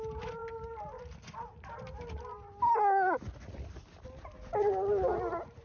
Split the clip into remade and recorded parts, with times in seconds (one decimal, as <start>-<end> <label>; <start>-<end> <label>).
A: 0.0-5.6 recorded

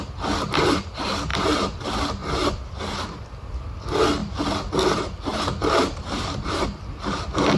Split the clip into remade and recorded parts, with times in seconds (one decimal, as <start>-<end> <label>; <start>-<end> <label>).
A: 0.0-1.3 recorded; 1.3-1.8 remade; 1.8-5.3 recorded; 5.3-6.6 remade; 6.6-7.6 recorded

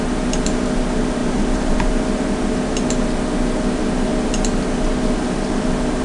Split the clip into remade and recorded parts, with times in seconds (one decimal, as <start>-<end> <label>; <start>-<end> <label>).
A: 0.0-1.2 recorded; 1.2-1.9 remade; 1.9-6.0 recorded